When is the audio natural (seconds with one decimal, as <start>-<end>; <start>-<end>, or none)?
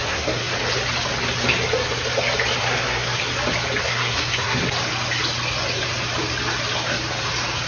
0.5-2.6; 3.2-3.8; 4.6-7.7